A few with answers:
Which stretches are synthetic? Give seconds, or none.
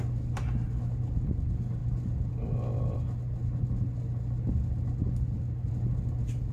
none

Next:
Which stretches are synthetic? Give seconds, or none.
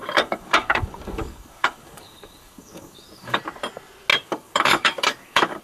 0.0-3.4 (codec, DAC); 4.1-5.6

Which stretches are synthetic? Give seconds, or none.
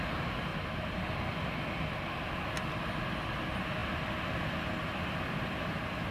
none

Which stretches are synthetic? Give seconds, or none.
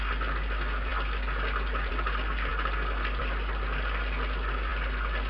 none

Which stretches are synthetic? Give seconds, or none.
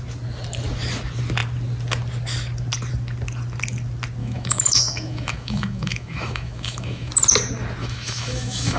4.2-7.1 (autoencoder, DAC-VAE); 7.8-8.8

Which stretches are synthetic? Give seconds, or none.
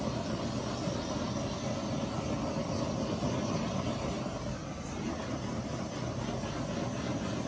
none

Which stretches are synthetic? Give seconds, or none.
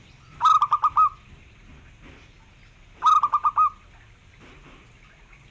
none